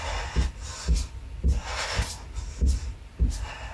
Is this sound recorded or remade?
recorded